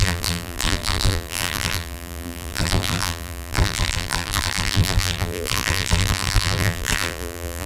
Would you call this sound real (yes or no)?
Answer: no